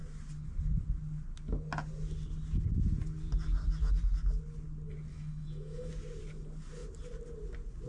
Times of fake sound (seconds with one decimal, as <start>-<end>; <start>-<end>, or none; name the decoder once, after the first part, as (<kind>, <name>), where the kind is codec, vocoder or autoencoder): 5.1-5.9 (autoencoder, DAC-VAE)